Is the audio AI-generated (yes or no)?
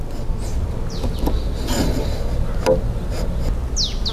no